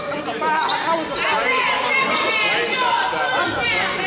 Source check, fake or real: real